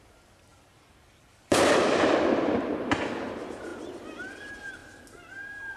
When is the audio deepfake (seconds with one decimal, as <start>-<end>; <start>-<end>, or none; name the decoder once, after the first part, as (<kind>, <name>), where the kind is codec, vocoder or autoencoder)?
0.0-3.7 (vocoder, BigVGAN v2); 4.3-4.8